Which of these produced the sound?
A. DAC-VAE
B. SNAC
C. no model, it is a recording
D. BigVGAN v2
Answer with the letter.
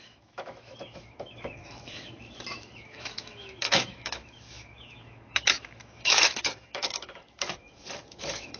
A